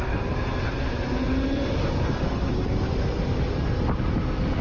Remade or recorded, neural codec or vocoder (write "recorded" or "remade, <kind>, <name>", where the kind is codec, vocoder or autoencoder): recorded